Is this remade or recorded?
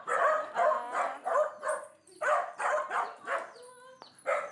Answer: recorded